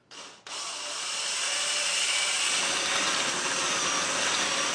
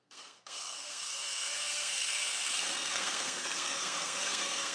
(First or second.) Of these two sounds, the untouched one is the first